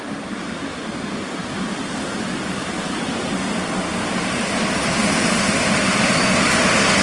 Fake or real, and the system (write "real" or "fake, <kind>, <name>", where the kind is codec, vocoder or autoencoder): real